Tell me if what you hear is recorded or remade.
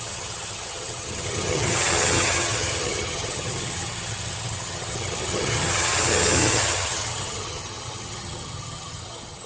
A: remade